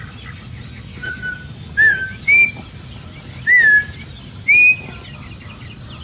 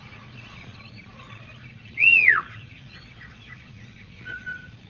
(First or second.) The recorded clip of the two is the first